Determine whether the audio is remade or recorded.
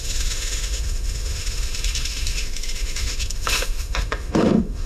remade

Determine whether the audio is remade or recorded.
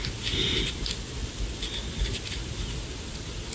recorded